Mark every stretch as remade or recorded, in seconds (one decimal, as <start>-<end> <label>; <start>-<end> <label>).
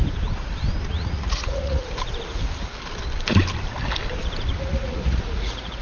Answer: 0.0-0.9 recorded; 0.9-1.8 remade; 1.8-4.6 recorded; 4.6-5.8 remade